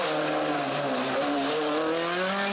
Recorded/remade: recorded